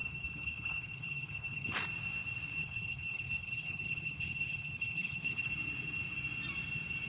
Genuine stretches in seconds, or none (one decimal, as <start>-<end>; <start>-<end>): 1.7-2.6; 5.5-7.1